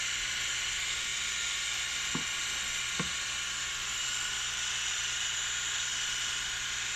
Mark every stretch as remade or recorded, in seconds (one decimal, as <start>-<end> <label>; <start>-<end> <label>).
0.0-7.0 recorded